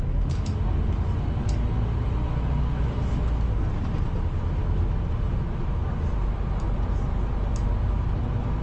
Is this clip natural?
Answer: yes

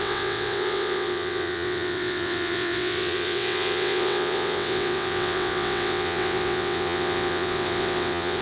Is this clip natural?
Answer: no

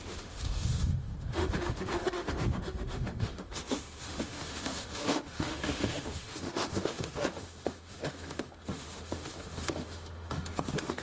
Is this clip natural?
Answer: no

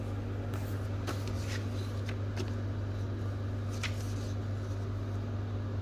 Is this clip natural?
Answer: yes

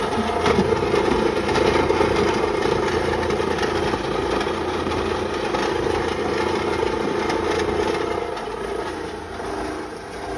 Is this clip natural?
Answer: yes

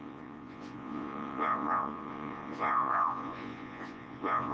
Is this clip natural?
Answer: no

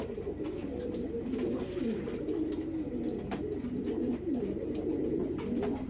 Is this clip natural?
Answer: yes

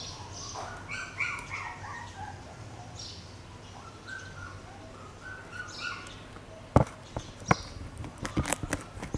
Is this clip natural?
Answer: yes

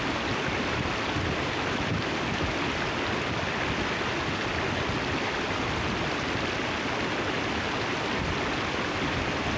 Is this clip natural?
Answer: yes